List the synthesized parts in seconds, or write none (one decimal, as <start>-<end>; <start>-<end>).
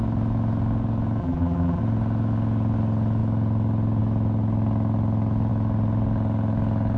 1.2-1.8